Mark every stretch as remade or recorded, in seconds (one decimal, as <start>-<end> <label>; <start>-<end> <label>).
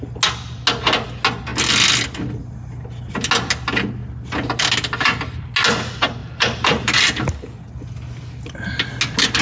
0.0-6.2 recorded; 6.2-7.0 remade; 7.0-9.4 recorded